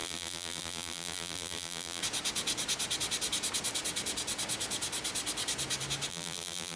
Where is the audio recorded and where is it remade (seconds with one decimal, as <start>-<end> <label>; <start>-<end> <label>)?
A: 0.0-2.0 remade; 2.0-6.1 recorded; 6.1-6.8 remade